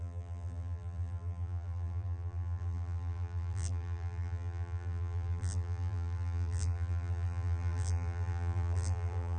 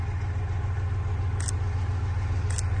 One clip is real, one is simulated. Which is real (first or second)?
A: second